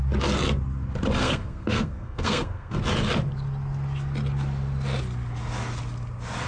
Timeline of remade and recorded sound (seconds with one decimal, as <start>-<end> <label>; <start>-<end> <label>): 0.0-1.2 recorded; 1.2-2.7 remade; 2.7-6.5 recorded